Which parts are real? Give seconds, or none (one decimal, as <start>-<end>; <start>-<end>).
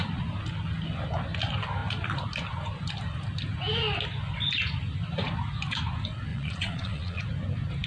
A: 0.0-6.3; 7.2-7.9